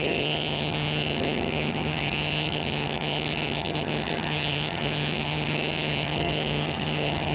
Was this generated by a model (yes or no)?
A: yes